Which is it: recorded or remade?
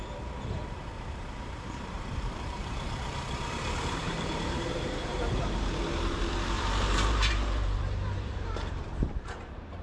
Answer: remade